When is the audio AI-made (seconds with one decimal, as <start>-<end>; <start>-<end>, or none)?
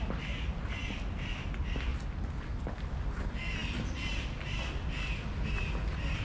none